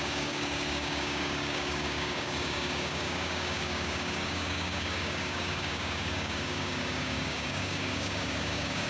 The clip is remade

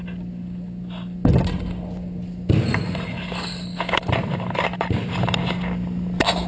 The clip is recorded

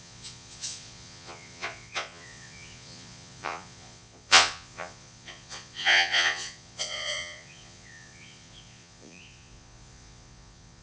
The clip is remade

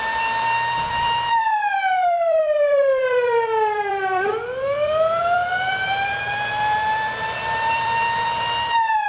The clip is remade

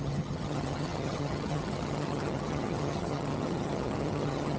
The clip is remade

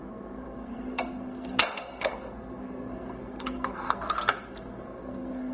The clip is remade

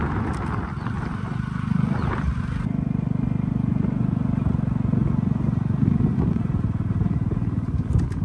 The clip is recorded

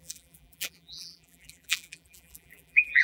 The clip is remade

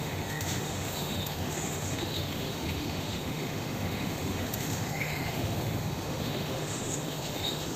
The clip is remade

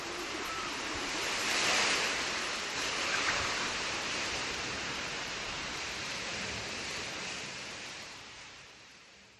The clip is remade